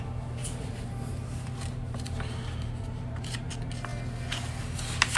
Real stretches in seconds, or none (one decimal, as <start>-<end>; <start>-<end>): 0.0-0.4; 3.5-5.2